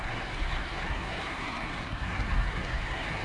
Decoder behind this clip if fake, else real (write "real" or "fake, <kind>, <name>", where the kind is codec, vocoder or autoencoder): fake, codec, SNAC